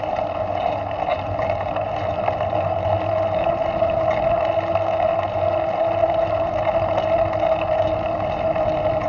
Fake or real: real